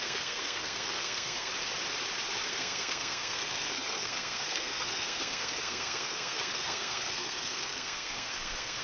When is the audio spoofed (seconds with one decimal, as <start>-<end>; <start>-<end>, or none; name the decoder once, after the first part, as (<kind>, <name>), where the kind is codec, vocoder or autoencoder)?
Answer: 0.0-1.5 (codec, SNAC); 2.5-8.8